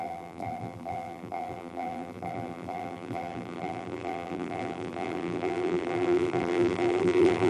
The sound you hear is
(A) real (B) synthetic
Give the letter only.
B